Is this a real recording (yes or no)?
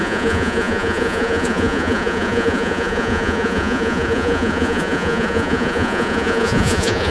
no